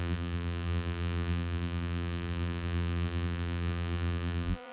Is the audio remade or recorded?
remade